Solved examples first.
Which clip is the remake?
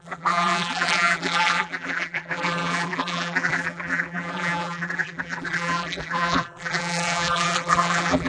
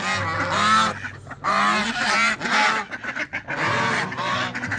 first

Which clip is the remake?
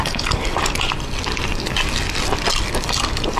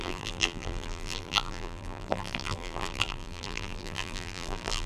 second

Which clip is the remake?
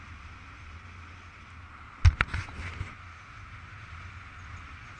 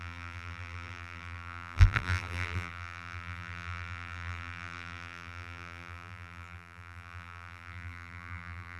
second